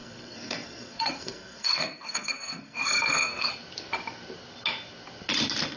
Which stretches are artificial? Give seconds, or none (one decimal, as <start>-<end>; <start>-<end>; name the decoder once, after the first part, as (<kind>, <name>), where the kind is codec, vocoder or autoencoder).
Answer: 0.0-3.5 (codec, SNAC)

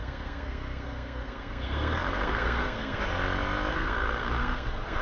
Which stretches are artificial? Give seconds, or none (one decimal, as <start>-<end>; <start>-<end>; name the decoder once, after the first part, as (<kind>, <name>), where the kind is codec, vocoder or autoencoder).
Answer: 0.0-3.0 (codec, SNAC); 3.7-5.0

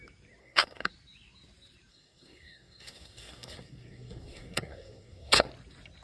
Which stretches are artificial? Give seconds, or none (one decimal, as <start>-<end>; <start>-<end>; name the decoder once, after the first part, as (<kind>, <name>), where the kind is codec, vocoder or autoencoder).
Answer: 0.4-0.9 (codec, SNAC); 1.9-5.5